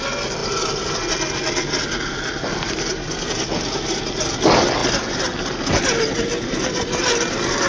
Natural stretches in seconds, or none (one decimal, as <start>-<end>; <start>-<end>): 0.0-7.7

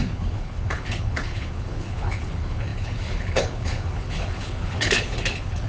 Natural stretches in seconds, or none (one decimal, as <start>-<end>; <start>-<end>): none

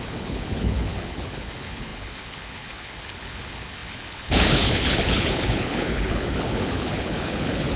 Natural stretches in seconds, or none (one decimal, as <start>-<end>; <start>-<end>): none

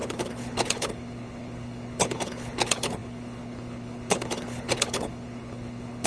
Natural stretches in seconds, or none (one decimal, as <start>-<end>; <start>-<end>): none

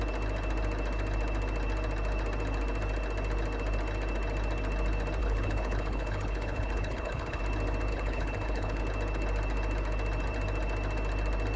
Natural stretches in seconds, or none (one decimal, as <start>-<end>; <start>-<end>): 0.0-5.2; 7.4-7.9; 8.8-11.6

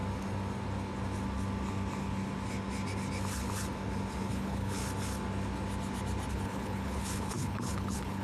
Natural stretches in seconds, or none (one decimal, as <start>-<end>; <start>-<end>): 0.0-4.3; 4.8-6.3

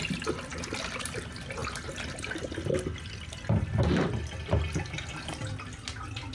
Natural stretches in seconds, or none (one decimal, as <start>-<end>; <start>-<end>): 0.0-6.3